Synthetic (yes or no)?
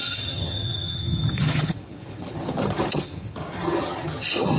yes